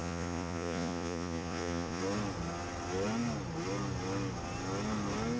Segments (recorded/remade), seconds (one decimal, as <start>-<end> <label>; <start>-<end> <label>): 0.0-2.0 remade; 2.0-5.4 recorded